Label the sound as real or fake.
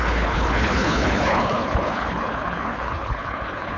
fake